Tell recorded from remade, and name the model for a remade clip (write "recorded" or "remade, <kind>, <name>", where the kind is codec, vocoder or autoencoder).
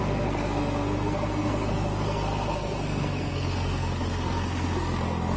remade, codec, SNAC